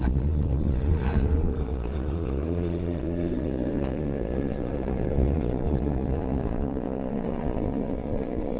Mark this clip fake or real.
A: fake